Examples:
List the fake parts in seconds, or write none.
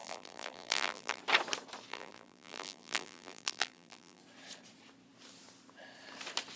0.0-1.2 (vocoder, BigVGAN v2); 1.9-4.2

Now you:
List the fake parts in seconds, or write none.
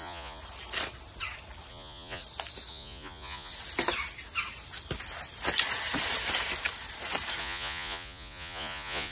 0.0-0.4 (vocoder, Vocos); 1.7-2.2; 2.7-3.5; 7.4-9.1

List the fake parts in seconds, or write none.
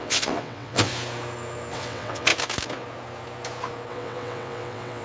0.0-0.9 (vocoder, WaveNeXt); 1.7-2.3; 3.9-5.0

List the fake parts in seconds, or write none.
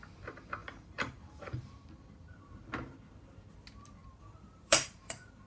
0.6-1.7 (vocoder, BigVGAN v2); 4.0-5.5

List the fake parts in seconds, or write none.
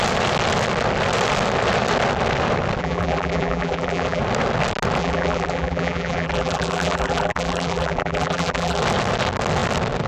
2.8-4.2 (vocoder, BigVGAN v2); 5.0-8.8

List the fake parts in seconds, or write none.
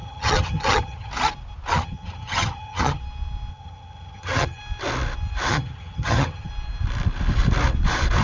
0.0-1.1 (vocoder, HiFi-GAN); 1.7-3.0; 3.5-4.6; 5.5-6.5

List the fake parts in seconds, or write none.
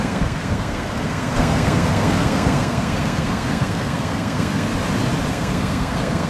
0.0-4.7 (codec, SNAC); 5.3-6.3